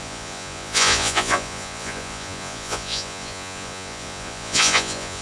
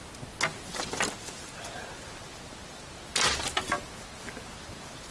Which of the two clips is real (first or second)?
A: second